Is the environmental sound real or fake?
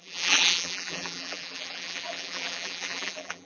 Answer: fake